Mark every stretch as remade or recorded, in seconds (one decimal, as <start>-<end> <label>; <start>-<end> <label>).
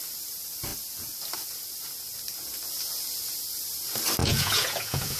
0.0-4.2 recorded; 4.2-5.2 remade